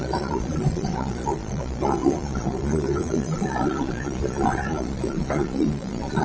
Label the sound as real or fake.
fake